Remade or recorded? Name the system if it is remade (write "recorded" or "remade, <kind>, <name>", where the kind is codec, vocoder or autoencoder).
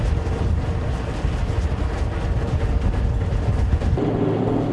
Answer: recorded